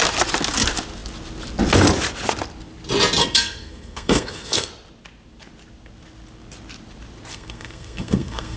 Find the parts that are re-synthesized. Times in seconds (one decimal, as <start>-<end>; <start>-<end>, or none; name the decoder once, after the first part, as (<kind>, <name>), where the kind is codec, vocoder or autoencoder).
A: 3.2-4.7 (codec, SNAC); 7.3-8.6